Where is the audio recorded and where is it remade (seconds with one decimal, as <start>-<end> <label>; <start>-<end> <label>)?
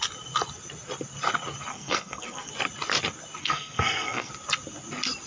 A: 0.0-1.7 recorded; 1.7-2.5 remade; 2.5-3.4 recorded; 3.4-4.3 remade; 4.3-5.3 recorded